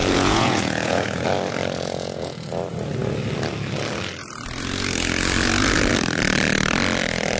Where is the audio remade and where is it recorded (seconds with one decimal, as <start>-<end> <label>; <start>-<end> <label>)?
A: 0.0-1.3 remade; 1.3-7.4 recorded